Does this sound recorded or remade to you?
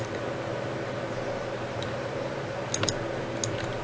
recorded